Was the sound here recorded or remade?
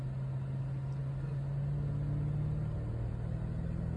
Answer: recorded